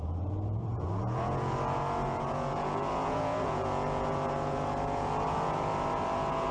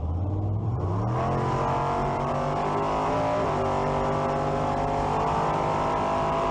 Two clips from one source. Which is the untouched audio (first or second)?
second